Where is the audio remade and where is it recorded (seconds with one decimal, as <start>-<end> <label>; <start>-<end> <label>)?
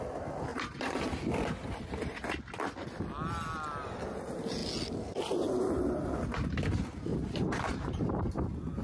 0.0-0.5 recorded; 0.5-1.2 remade; 1.2-7.1 recorded; 7.1-8.8 remade